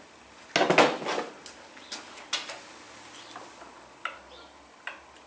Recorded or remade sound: recorded